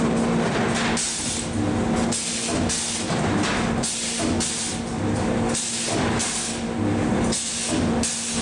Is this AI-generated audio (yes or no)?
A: no